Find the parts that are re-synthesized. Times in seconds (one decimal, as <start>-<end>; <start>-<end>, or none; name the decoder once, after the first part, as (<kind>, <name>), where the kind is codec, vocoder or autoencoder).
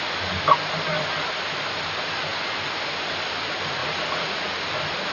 3.8-4.5 (vocoder, Vocos)